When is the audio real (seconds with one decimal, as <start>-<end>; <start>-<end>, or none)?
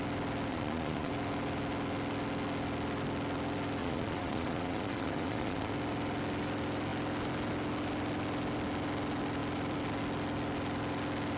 0.0-0.5; 1.1-3.8; 5.7-11.4